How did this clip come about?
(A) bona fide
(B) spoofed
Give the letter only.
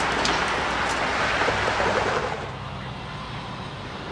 A